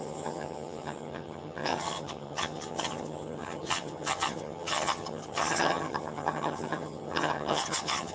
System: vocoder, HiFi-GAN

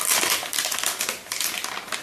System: none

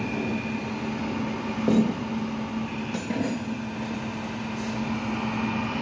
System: none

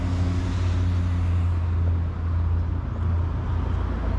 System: none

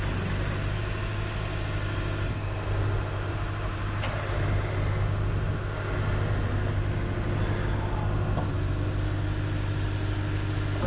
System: none